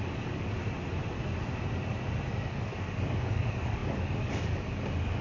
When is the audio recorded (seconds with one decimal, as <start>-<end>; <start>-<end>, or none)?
0.6-2.3